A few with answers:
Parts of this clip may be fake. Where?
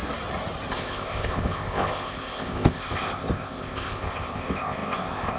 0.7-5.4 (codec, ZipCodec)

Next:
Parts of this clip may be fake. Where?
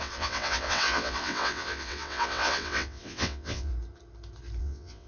0.0-3.7 (vocoder, WaveNeXt); 4.6-5.1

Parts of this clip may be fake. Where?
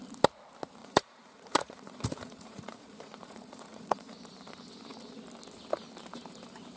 0.8-4.1 (vocoder, Vocos)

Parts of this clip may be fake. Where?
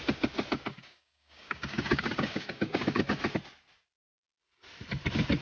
0.7-3.0 (codec, DAC)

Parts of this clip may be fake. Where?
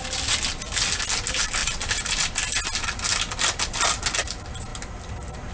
none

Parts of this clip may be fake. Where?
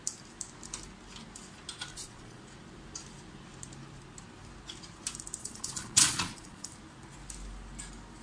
1.9-2.4 (vocoder, Vocos); 5.4-6.7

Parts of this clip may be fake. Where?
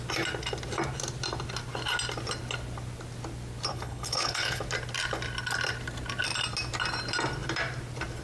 3.7-4.6 (codec, HILCodec)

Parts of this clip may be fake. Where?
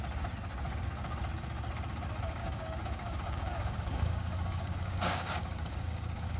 2.4-6.4 (codec, DAC)